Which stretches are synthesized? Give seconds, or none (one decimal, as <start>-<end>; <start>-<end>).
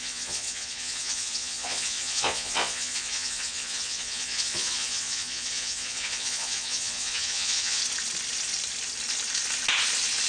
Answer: 0.0-7.8